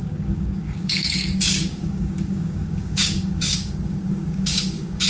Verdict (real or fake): fake